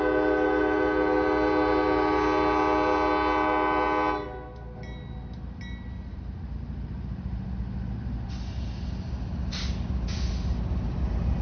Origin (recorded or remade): recorded